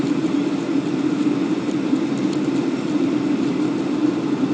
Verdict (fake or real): real